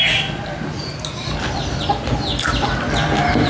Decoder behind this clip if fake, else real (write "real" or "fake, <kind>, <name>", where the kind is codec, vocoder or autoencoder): real